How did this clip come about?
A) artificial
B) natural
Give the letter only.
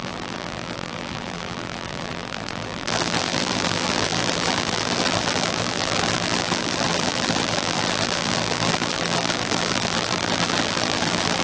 A